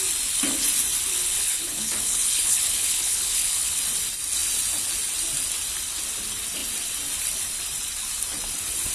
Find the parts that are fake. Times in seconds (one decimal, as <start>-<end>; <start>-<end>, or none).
1.1-3.8